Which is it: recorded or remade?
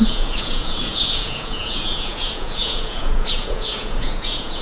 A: remade